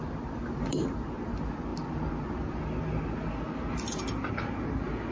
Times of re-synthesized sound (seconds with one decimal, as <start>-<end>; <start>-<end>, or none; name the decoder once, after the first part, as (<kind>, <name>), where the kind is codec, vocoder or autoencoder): none